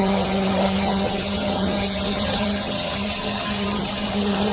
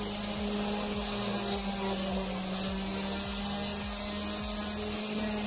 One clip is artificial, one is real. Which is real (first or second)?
second